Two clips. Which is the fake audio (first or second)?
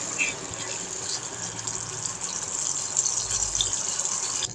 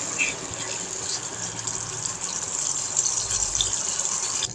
second